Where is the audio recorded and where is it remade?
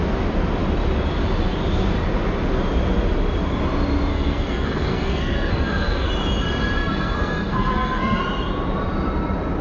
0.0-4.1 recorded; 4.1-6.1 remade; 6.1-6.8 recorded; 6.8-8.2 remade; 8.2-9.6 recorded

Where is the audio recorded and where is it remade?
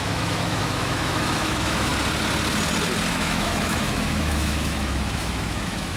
0.0-1.9 remade; 1.9-3.1 recorded; 3.1-6.0 remade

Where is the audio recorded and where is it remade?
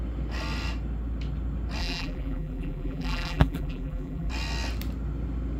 0.0-1.8 recorded; 1.8-4.3 remade; 4.3-5.6 recorded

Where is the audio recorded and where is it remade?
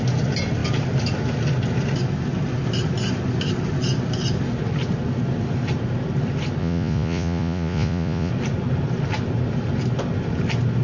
0.0-6.6 recorded; 6.6-8.3 remade; 8.3-10.8 recorded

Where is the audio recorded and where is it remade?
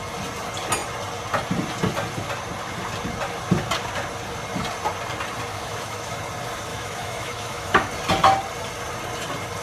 0.0-5.5 recorded; 5.5-6.1 remade; 6.1-6.7 recorded; 6.7-7.9 remade; 7.9-9.6 recorded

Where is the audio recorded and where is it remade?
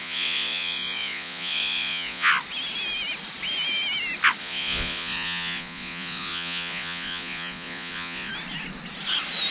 0.0-2.3 remade; 2.3-4.4 recorded; 4.4-8.3 remade; 8.3-9.5 recorded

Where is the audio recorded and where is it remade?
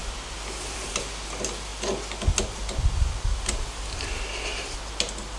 0.0-0.9 remade; 0.9-5.4 recorded